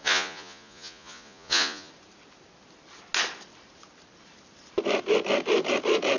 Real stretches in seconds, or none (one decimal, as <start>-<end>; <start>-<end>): 1.9-6.2